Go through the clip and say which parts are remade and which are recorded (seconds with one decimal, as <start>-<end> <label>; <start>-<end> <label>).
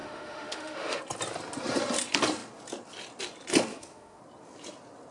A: 0.0-1.0 remade; 1.0-3.7 recorded; 3.7-4.2 remade; 4.2-5.1 recorded